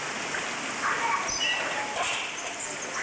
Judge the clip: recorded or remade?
recorded